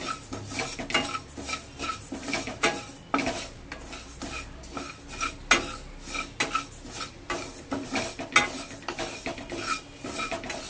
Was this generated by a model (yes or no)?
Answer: no